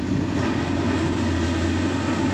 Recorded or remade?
recorded